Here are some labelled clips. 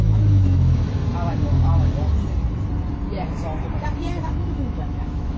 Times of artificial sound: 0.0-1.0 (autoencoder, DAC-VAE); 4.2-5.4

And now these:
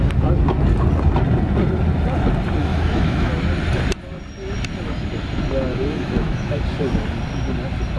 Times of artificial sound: 2.6-3.3 (autoencoder, DAC-VAE); 5.7-6.6